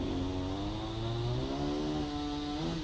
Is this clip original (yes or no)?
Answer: yes